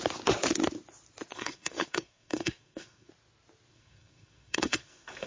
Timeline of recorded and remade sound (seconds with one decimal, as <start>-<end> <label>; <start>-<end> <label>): 0.0-1.3 recorded; 1.3-3.1 remade; 3.1-3.7 recorded; 3.7-5.3 remade